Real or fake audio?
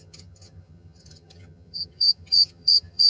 fake